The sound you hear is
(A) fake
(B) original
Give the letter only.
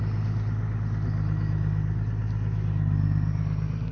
B